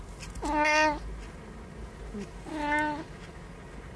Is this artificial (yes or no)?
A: no